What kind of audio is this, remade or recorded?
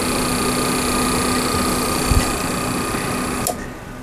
recorded